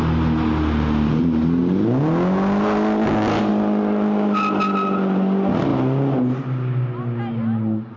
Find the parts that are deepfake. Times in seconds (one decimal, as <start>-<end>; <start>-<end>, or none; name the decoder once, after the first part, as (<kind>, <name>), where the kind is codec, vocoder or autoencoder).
none